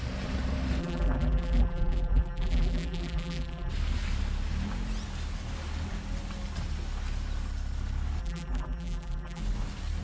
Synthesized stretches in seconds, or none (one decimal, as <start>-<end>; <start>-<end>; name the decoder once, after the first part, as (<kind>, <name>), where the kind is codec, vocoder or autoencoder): 0.8-3.7 (vocoder, BigVGAN v2); 8.2-9.4